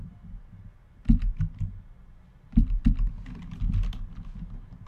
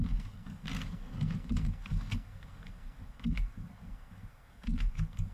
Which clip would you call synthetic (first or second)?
second